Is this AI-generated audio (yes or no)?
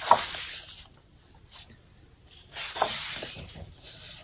yes